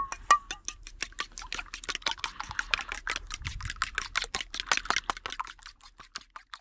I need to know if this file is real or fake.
real